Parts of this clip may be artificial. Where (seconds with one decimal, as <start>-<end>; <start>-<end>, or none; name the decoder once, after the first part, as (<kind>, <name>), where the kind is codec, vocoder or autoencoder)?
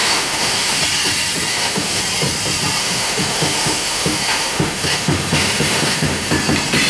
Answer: 0.0-0.8 (autoencoder, DAC-VAE); 1.5-2.0; 2.8-6.3